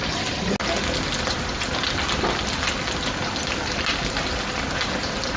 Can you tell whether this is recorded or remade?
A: recorded